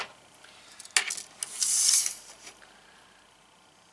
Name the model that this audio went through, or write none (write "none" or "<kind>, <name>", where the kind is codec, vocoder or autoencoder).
none